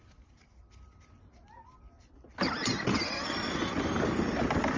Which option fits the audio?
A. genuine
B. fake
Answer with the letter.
A